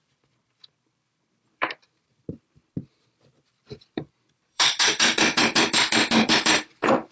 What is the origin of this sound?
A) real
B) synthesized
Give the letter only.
B